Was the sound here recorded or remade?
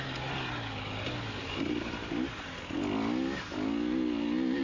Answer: recorded